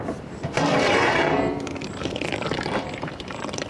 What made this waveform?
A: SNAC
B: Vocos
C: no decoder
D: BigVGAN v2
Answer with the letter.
D